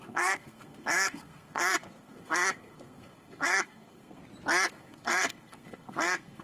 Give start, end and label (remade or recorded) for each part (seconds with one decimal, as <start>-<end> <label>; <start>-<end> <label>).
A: 0.0-4.2 remade; 4.2-4.7 recorded; 4.7-6.4 remade